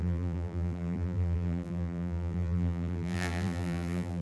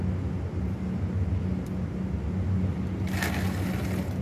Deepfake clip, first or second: first